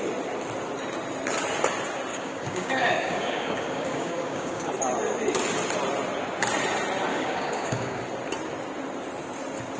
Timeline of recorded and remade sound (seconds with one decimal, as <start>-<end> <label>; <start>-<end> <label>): 0.0-2.1 recorded; 2.1-4.7 remade; 4.7-7.1 recorded; 7.1-8.0 remade; 8.0-9.8 recorded